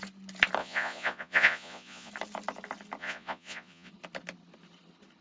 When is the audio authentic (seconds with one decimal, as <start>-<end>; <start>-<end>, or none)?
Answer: 0.0-0.6; 2.1-3.0; 3.9-5.2